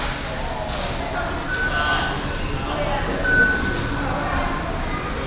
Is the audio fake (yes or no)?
no